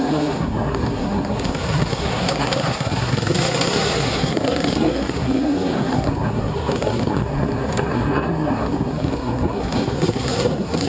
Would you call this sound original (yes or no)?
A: no